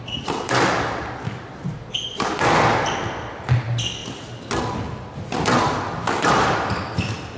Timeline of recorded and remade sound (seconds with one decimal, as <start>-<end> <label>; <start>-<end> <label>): 0.0-7.4 recorded